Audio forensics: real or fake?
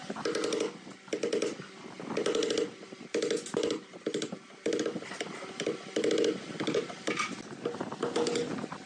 real